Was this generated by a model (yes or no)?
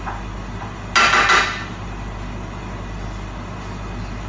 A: no